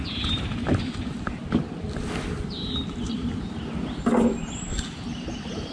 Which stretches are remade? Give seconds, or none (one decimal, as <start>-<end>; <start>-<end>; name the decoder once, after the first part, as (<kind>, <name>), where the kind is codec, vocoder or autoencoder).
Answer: 0.7-1.6 (vocoder, BigVGAN v2)